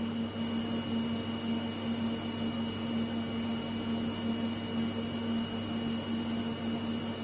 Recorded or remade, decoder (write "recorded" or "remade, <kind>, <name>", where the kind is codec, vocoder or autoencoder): recorded